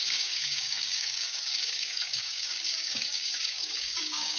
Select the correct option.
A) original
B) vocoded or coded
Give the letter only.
B